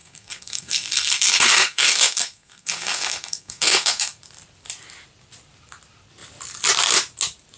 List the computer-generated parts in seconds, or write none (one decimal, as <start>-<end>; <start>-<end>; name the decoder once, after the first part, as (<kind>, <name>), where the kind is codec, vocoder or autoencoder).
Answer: 0.0-4.2 (codec, SNAC)